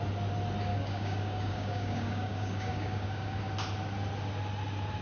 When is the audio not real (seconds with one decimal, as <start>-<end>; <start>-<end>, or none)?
0.7-3.4